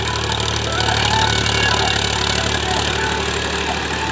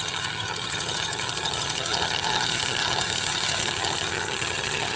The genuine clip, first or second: first